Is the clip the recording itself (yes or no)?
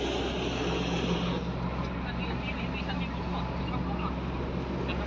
yes